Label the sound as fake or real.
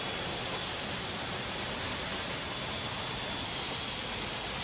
real